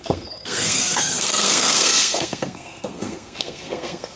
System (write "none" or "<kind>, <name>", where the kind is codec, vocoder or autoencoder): codec, SNAC